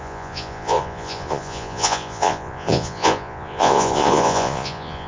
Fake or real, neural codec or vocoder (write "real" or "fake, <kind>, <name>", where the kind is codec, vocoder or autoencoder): fake, vocoder, Vocos